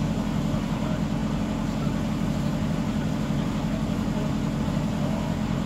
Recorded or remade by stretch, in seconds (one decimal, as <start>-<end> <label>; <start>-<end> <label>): 0.0-5.7 recorded